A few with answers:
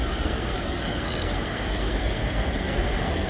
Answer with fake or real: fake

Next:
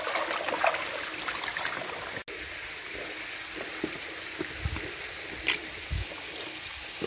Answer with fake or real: real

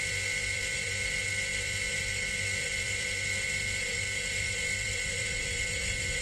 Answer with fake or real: fake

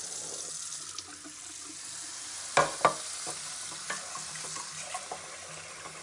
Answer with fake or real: real